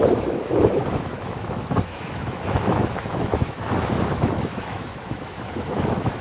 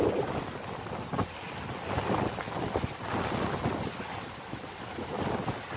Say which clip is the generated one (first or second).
first